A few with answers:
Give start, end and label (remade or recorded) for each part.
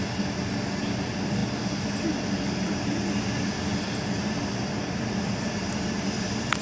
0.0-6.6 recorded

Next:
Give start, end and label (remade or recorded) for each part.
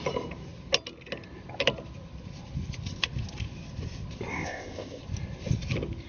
0.0-4.3 recorded; 4.3-5.0 remade; 5.0-6.1 recorded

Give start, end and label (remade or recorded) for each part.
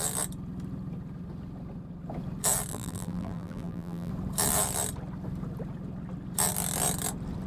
0.0-2.7 recorded; 2.7-4.1 remade; 4.1-7.5 recorded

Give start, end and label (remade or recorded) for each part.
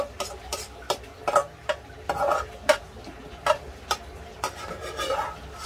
0.0-3.6 recorded; 3.6-4.7 remade; 4.7-5.7 recorded